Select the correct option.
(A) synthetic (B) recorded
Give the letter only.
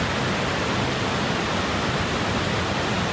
B